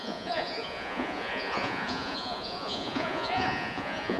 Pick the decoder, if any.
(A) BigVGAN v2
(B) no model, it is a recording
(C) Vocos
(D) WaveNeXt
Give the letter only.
C